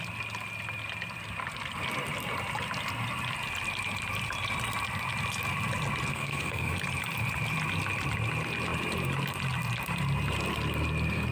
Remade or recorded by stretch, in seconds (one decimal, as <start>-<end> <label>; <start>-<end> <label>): 0.0-6.1 recorded; 6.1-6.7 remade; 6.7-11.3 recorded